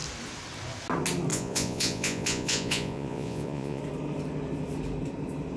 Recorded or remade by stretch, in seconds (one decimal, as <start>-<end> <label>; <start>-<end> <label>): 0.0-1.3 recorded; 1.3-3.8 remade; 3.8-5.6 recorded